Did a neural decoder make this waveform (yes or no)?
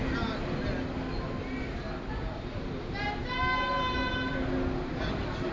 no